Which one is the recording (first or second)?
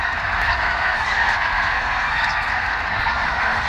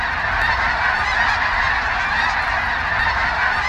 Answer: second